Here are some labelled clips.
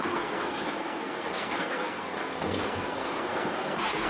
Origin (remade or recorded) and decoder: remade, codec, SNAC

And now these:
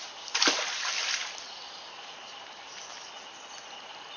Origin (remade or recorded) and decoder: recorded